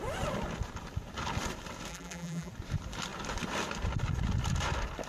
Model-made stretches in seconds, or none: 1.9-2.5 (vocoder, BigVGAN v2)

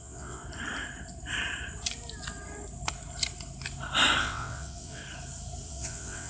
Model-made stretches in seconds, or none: 0.0-0.4 (vocoder, WaveNeXt); 4.2-5.0; 5.7-6.3

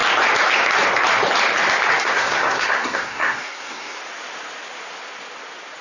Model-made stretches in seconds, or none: 2.0-4.0 (codec, SNAC)

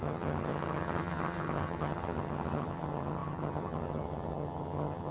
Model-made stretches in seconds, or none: 0.0-5.1 (vocoder, HiFi-GAN)

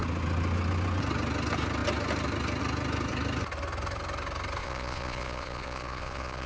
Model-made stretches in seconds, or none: 4.6-6.5 (vocoder, Vocos)

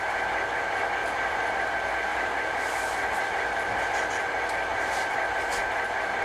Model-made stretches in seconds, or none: 1.0-1.6 (vocoder, BigVGAN v2); 2.1-3.9; 4.7-5.5

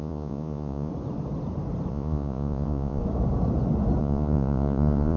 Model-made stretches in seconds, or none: 0.0-0.9 (vocoder, Vocos); 1.9-3.0; 4.0-5.2